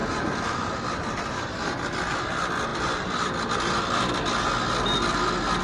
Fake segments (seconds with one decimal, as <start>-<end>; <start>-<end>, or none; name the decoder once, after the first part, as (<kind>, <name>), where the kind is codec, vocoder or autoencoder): 0.0-0.5 (vocoder, BigVGAN v2)

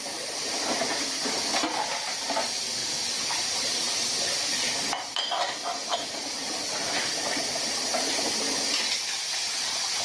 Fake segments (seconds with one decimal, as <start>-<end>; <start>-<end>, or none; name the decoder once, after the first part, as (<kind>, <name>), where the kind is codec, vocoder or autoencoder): none

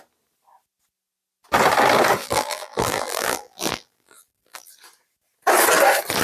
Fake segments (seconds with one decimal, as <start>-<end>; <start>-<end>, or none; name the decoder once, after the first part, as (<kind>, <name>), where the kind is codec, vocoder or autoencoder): 2.2-4.7 (vocoder, BigVGAN v2)

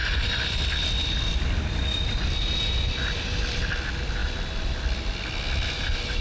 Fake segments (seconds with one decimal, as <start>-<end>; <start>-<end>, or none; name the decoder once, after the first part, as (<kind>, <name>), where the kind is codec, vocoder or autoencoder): 0.0-3.7 (vocoder, BigVGAN v2); 4.2-4.8

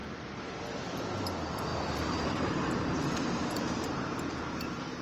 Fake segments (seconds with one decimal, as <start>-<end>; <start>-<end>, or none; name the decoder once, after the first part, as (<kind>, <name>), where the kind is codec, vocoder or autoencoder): 1.7-5.0 (vocoder, BigVGAN v2)

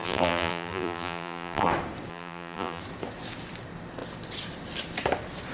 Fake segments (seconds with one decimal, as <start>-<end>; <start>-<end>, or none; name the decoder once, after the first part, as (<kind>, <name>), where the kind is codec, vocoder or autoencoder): 0.0-1.7 (vocoder, BigVGAN v2); 2.1-2.8